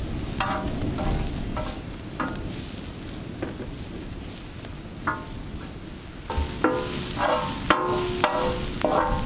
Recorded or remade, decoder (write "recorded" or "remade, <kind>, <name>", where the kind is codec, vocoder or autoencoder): recorded